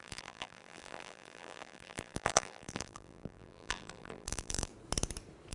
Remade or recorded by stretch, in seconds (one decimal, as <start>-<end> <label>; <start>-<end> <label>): 0.0-4.7 remade; 4.7-5.5 recorded